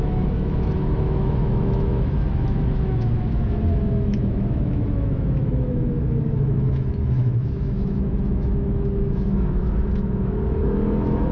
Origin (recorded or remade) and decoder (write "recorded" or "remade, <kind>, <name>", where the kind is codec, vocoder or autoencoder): remade, autoencoder, DAC-VAE